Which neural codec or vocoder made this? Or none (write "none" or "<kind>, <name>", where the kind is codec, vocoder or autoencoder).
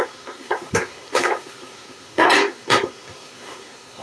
codec, SNAC